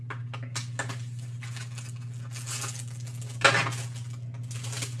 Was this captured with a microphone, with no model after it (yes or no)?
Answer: yes